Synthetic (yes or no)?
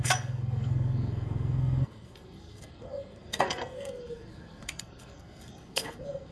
yes